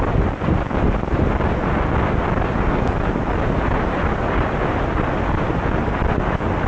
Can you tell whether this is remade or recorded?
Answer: recorded